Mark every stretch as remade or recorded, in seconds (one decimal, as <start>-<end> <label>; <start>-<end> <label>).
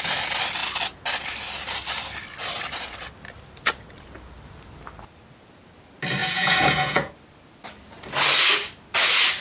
0.0-6.2 recorded; 6.2-7.1 remade; 7.1-9.4 recorded